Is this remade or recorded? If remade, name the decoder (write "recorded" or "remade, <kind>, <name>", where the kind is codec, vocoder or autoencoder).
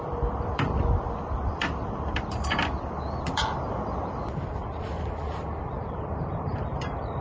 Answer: remade, vocoder, BigVGAN v2